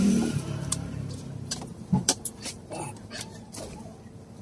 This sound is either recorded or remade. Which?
remade